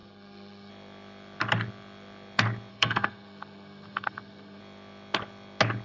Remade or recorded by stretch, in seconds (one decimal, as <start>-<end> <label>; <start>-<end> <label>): 0.0-0.7 remade; 0.7-2.7 recorded; 2.7-4.6 remade; 4.6-5.8 recorded